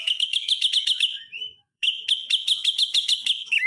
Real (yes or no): no